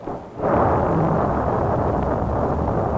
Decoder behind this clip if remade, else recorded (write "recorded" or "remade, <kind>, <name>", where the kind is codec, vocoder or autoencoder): recorded